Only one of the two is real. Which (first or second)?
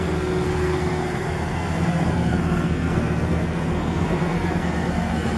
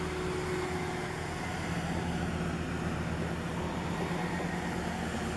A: second